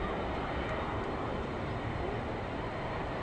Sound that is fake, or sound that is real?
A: real